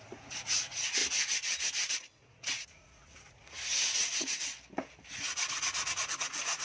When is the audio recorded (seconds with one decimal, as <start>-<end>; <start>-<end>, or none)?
1.0-1.9; 4.5-5.1